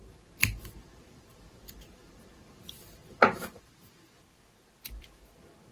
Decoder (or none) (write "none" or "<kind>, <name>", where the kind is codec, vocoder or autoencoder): vocoder, BigVGAN v2